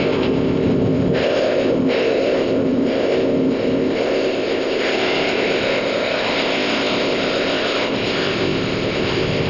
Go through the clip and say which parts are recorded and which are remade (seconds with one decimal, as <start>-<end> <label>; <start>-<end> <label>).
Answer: 0.0-9.5 remade

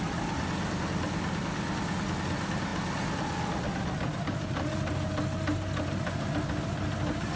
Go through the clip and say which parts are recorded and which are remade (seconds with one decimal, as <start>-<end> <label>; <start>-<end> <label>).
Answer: 0.0-7.4 recorded

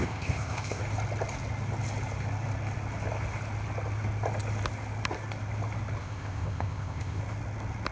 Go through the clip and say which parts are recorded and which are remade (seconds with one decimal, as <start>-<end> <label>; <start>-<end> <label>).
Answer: 0.0-0.8 remade; 0.8-6.0 recorded; 6.0-7.2 remade; 7.2-7.9 recorded

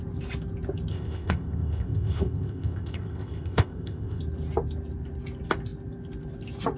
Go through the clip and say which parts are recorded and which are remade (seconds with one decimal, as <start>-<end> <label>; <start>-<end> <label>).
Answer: 0.0-0.9 recorded; 0.9-4.2 remade; 4.2-6.8 recorded